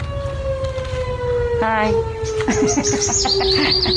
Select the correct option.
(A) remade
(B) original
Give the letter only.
B